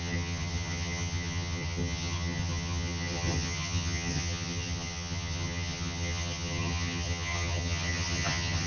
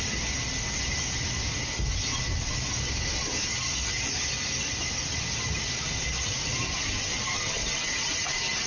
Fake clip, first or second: first